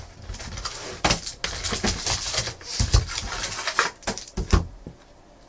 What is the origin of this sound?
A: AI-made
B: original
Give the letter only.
B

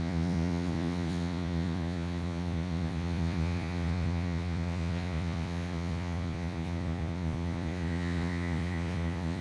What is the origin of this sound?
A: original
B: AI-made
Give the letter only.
B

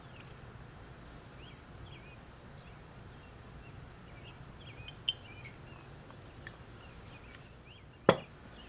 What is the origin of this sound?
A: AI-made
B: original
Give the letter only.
B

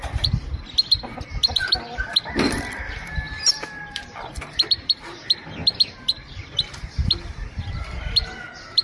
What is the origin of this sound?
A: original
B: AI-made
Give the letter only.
A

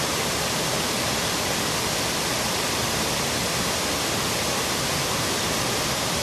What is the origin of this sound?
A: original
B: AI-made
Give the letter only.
B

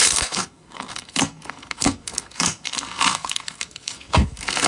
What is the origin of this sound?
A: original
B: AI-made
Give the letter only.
B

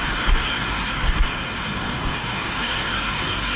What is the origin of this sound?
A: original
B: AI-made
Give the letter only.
B